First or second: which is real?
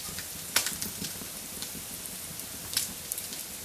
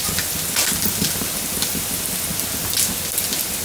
second